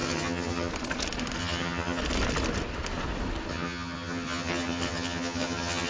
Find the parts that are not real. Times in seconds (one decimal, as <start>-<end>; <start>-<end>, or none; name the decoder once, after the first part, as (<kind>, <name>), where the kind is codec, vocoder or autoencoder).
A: 0.0-0.7 (vocoder, HiFi-GAN); 1.4-2.0; 3.5-5.9